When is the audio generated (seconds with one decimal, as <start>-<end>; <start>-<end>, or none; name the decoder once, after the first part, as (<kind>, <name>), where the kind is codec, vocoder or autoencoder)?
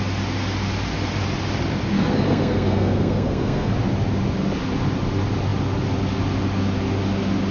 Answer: 1.9-3.7 (codec, SNAC)